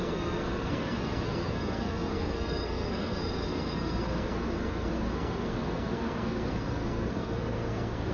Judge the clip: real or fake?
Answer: fake